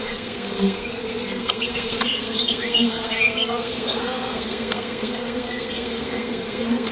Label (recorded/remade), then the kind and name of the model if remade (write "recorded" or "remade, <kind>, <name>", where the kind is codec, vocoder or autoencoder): remade, codec, SNAC